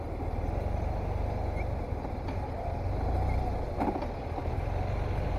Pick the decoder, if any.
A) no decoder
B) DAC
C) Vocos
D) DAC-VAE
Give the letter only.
A